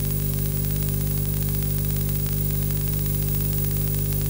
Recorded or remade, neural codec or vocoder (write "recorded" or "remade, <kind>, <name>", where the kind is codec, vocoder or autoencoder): recorded